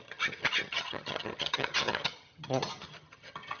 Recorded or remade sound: remade